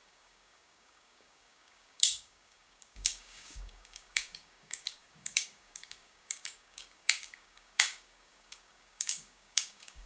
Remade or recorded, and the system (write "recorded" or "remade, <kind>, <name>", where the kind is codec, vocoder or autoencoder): remade, codec, DAC